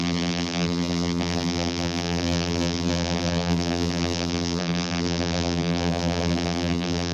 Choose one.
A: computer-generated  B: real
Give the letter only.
A